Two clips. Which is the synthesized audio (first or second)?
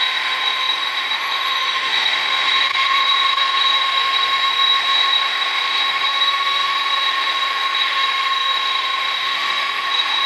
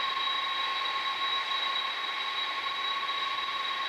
first